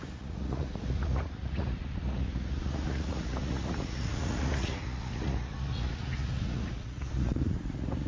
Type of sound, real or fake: fake